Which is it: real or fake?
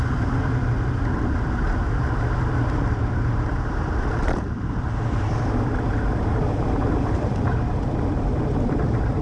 fake